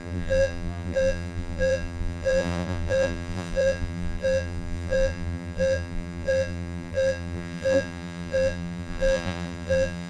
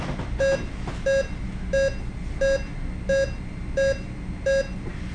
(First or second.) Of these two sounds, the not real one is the first